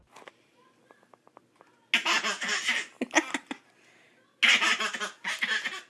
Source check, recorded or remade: recorded